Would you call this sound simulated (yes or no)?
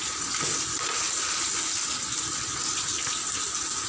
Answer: no